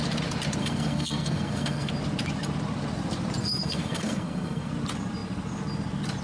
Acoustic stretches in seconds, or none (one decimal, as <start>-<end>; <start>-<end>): 0.0-0.6; 1.9-3.4; 4.7-6.2